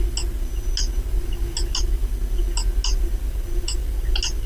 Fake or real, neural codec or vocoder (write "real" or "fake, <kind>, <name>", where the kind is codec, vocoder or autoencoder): real